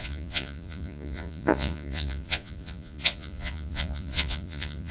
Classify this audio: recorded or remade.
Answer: remade